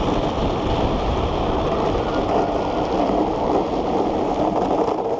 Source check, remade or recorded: recorded